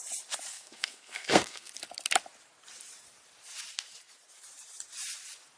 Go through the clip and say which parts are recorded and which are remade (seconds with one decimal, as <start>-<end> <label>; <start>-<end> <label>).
0.0-0.5 recorded; 0.5-1.7 remade; 1.7-5.6 recorded